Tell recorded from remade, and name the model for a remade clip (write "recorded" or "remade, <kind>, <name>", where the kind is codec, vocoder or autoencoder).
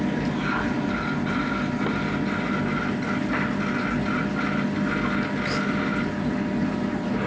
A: recorded